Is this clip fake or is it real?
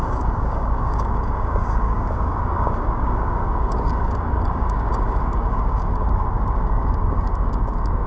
fake